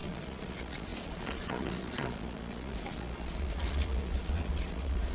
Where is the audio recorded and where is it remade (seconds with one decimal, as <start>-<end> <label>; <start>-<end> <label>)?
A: 0.0-5.1 remade